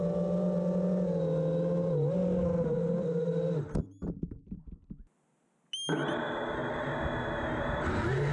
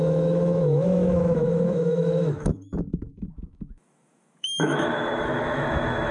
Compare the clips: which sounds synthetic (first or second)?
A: second